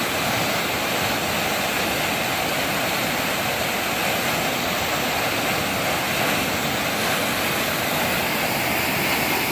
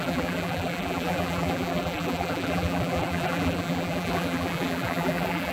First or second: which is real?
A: first